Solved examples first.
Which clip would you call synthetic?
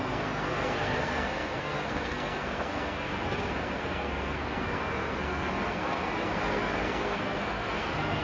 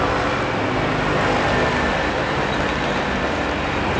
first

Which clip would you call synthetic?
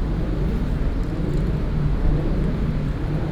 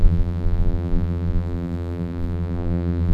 second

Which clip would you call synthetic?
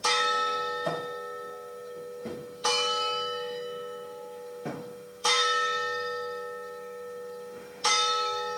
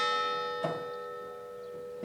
first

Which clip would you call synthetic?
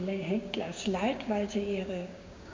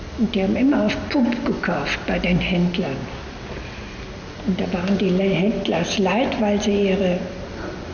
first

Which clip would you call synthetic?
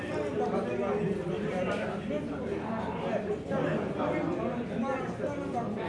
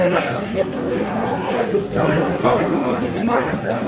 second